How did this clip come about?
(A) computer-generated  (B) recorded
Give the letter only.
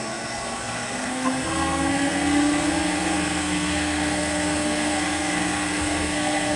A